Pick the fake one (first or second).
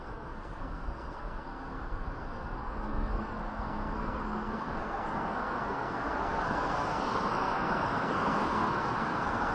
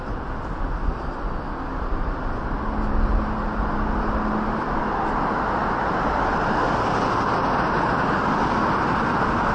first